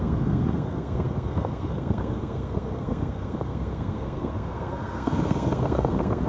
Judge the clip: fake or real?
fake